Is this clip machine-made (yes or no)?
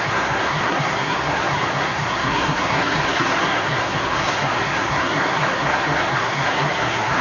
yes